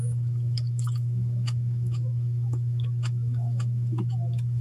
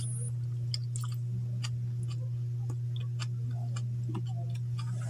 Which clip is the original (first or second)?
second